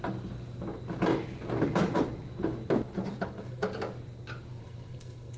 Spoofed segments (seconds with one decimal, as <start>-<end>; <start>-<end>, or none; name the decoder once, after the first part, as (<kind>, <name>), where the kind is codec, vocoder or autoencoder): 3.2-3.6 (codec, SNAC); 4.6-5.4